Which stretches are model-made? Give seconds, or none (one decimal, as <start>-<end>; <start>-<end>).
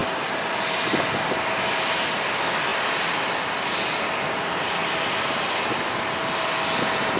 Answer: none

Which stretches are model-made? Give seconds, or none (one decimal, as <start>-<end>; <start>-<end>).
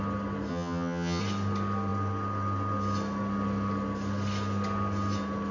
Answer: 0.5-1.2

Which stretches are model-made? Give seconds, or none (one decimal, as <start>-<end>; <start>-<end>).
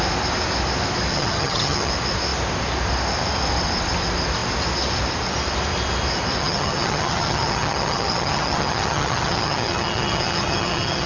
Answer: 1.1-1.9; 6.4-11.1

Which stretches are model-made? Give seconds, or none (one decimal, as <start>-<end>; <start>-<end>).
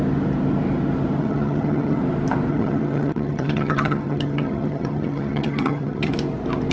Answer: 1.2-2.0; 2.5-6.1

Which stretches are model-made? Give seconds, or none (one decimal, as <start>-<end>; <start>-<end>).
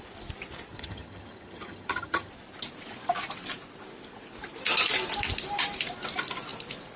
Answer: 0.7-2.3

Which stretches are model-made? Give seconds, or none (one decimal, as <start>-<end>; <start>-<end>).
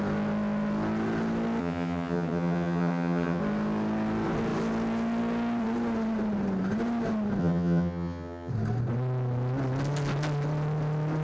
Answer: 1.6-3.4; 7.4-8.5